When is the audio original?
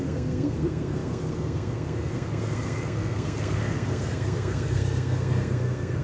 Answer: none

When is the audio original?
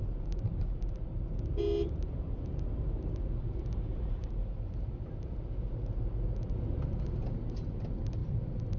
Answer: 0.0-8.8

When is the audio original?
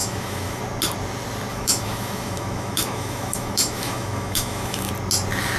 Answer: 0.6-1.5; 4.9-5.6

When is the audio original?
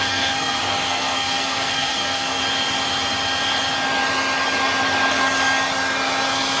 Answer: 2.4-6.6